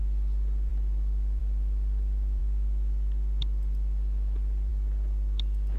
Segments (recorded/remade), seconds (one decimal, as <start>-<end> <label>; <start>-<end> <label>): 0.0-5.8 recorded

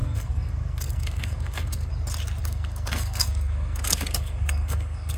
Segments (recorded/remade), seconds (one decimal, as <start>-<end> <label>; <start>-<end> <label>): 0.0-1.9 remade; 1.9-2.4 recorded; 2.4-5.2 remade

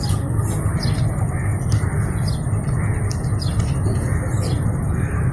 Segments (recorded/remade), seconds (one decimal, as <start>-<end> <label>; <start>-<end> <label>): 0.0-5.3 recorded

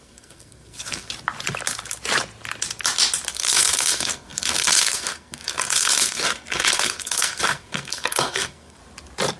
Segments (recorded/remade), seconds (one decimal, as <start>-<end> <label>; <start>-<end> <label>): 0.0-1.1 remade; 1.1-3.3 recorded; 3.3-8.8 remade; 8.8-9.4 recorded

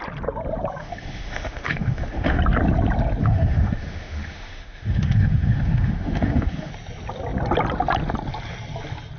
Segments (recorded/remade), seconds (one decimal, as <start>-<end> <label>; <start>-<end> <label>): 0.0-0.8 recorded; 0.8-2.4 remade; 2.4-3.2 recorded; 3.2-6.7 remade; 6.7-9.2 recorded

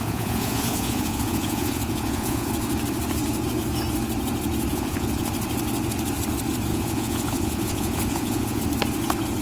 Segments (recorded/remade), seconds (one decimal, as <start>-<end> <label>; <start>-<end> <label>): 0.0-2.5 remade; 2.5-4.7 recorded; 4.7-5.3 remade; 5.3-6.7 recorded; 6.7-8.6 remade; 8.6-9.4 recorded

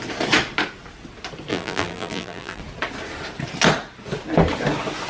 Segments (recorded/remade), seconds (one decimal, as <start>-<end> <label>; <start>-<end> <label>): 0.0-1.5 recorded; 1.5-2.6 remade; 2.6-5.1 recorded